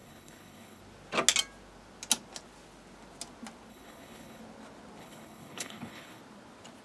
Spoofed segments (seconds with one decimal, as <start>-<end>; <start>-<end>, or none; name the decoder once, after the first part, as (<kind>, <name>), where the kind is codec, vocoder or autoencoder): 0.0-0.8 (codec, HILCodec); 3.7-4.4; 5.0-6.2